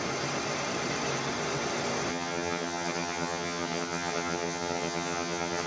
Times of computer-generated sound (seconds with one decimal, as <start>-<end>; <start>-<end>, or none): 2.1-5.7